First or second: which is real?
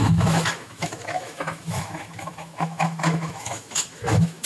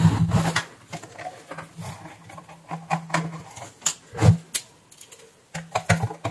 second